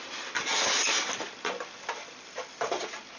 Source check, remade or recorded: recorded